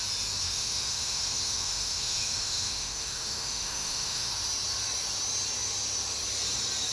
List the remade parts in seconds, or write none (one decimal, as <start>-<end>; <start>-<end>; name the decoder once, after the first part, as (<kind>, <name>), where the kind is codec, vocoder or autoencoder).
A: 0.4-4.3 (autoencoder, DAC-VAE)